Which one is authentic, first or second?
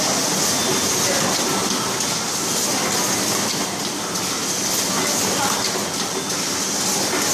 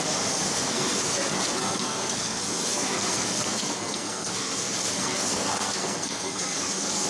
first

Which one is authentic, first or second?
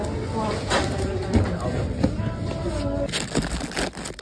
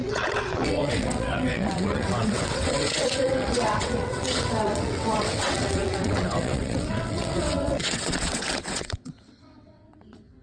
first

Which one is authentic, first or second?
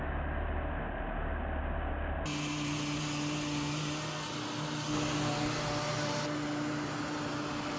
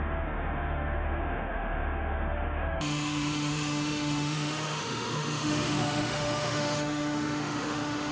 first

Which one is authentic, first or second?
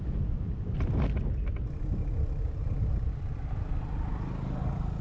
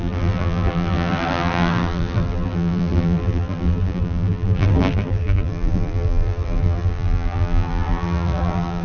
first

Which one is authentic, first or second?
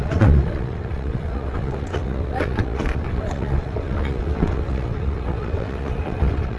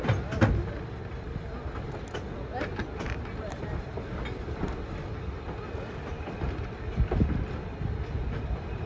second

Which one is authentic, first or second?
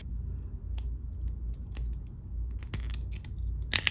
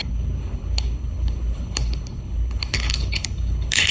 first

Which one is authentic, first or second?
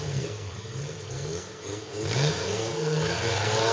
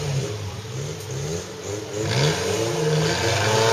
second